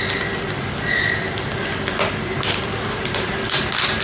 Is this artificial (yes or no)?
no